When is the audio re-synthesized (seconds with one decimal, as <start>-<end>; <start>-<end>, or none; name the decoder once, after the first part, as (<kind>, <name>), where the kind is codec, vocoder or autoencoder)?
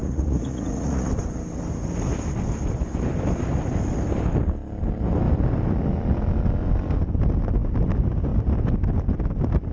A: 0.0-1.1 (vocoder, Vocos)